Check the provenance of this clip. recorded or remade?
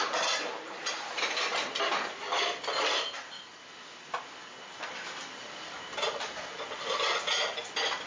recorded